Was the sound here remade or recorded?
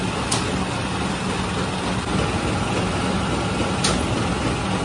recorded